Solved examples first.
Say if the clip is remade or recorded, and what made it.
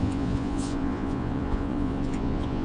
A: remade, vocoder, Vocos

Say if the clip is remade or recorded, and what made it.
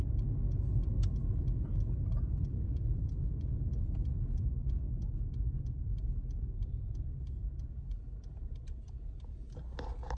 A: recorded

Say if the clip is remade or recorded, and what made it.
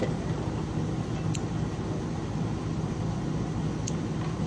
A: recorded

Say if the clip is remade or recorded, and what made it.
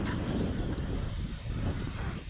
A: recorded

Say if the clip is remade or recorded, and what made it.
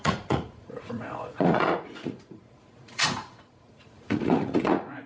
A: remade, vocoder, Vocos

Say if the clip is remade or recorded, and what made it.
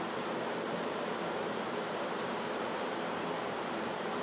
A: remade, vocoder, BigVGAN v2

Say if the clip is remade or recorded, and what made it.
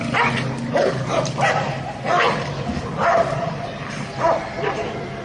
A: recorded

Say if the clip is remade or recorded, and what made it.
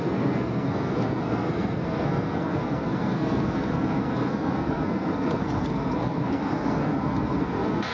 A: remade, codec, SNAC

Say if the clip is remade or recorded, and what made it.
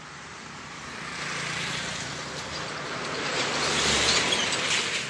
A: remade, vocoder, BigVGAN v2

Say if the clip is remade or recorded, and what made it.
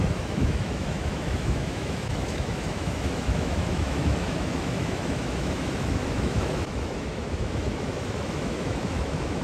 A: remade, autoencoder, DAC-VAE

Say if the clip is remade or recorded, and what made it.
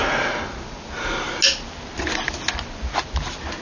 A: recorded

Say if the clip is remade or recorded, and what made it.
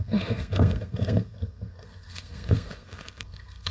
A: remade, codec, SNAC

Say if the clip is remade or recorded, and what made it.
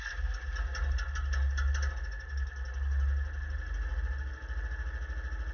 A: recorded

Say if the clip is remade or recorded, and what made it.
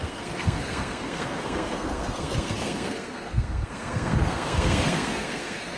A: remade, codec, SNAC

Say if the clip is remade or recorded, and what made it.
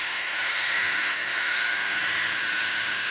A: remade, autoencoder, DAC-VAE